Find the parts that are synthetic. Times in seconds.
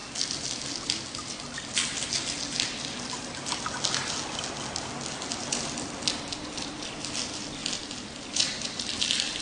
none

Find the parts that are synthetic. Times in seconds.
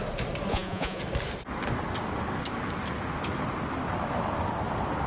0.5-1.0 (vocoder, Vocos)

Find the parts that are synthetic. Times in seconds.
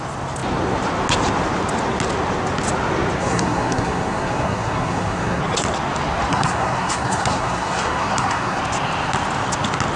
3.2-5.4 (codec, SNAC); 6.3-8.6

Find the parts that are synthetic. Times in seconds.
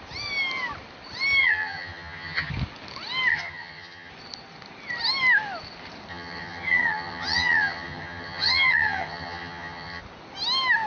1.4-2.5 (vocoder, HiFi-GAN); 3.3-4.1; 6.1-10.0